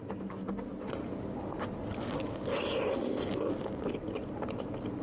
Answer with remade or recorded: recorded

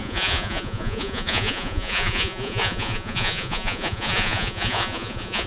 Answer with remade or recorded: remade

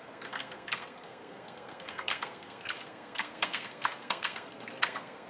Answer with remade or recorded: remade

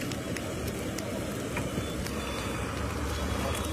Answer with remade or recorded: recorded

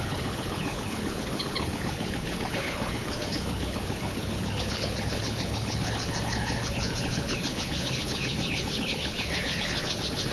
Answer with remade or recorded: remade